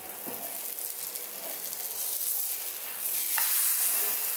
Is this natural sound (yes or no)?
yes